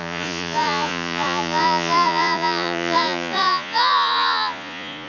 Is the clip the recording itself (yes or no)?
no